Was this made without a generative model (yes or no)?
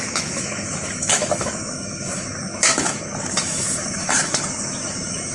no